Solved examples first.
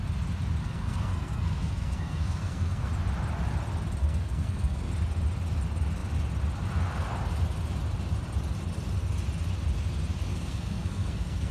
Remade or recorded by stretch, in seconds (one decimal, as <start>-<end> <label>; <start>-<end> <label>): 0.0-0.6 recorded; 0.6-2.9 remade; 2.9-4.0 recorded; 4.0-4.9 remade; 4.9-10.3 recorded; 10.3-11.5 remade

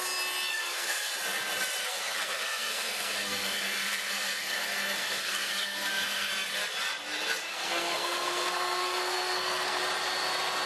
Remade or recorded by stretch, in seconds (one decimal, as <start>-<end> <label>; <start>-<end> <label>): 0.0-0.5 recorded; 0.5-1.1 remade; 1.1-1.8 recorded; 1.8-6.3 remade; 6.3-7.5 recorded; 7.5-9.8 remade; 9.8-10.7 recorded

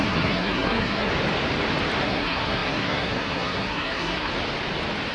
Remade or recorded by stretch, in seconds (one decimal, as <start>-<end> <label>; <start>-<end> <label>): 0.0-1.1 remade; 1.1-2.0 recorded; 2.0-4.3 remade; 4.3-5.1 recorded

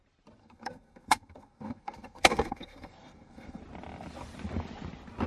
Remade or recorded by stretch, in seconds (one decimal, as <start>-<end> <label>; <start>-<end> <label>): 0.0-0.4 recorded; 0.4-3.6 remade; 3.6-5.3 recorded

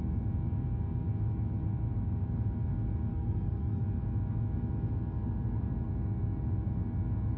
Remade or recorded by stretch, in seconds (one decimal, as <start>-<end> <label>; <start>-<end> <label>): 0.0-3.1 recorded; 3.1-3.8 remade; 3.8-7.4 recorded

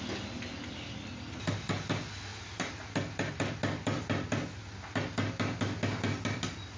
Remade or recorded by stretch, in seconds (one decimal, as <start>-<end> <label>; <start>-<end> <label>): 0.0-6.8 recorded